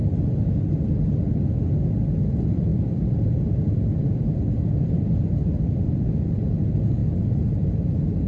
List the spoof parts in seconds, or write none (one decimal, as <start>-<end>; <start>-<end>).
0.0-0.5; 2.7-6.3